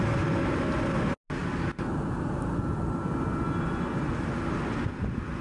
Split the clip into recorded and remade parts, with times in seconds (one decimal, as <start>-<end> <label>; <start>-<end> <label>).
0.0-5.4 recorded